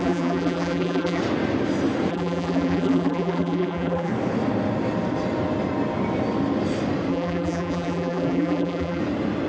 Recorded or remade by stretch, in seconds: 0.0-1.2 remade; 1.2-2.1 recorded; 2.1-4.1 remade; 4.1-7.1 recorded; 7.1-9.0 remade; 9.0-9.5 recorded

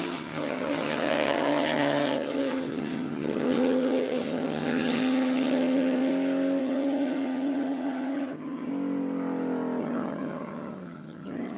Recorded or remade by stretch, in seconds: 0.0-6.1 remade; 6.1-6.6 recorded; 6.6-8.7 remade; 8.7-9.8 recorded; 9.8-11.6 remade

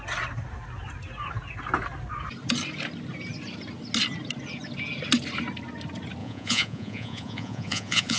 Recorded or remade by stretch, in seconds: 0.0-6.2 recorded; 6.2-8.2 remade

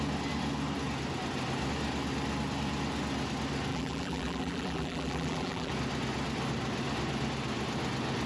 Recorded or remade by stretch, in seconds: 0.0-3.7 recorded; 3.7-5.7 remade; 5.7-8.3 recorded

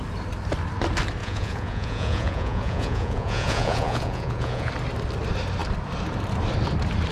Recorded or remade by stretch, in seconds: 0.0-1.2 recorded; 1.2-4.7 remade; 4.7-7.1 recorded

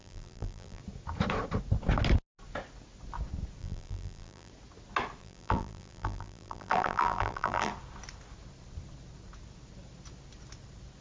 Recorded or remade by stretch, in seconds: 0.0-0.8 remade; 0.8-3.6 recorded; 3.6-4.5 remade; 4.5-5.2 recorded; 5.2-7.7 remade; 7.7-11.0 recorded